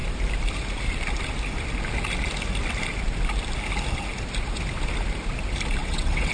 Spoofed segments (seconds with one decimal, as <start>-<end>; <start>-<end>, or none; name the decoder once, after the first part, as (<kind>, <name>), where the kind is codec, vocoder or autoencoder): 5.8-6.3 (vocoder, WaveNeXt)